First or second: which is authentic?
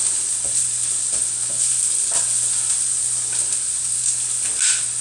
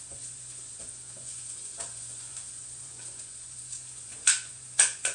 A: first